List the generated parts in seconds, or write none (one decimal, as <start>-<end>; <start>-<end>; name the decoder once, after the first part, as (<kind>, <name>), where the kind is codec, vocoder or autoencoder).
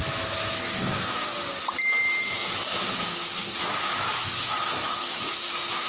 0.0-1.3 (autoencoder, DAC-VAE); 2.2-5.9